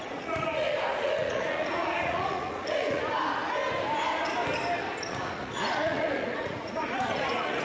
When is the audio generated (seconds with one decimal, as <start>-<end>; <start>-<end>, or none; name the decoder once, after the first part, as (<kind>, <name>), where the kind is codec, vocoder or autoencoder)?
0.0-3.0 (vocoder, Vocos); 5.0-7.6